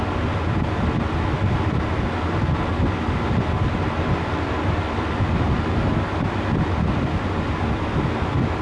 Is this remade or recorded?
recorded